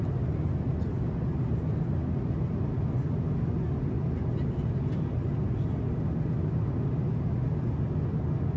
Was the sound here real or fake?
real